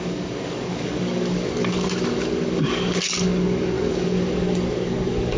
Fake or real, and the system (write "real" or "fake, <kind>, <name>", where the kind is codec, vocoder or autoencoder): fake, codec, DAC